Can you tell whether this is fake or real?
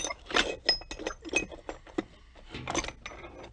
real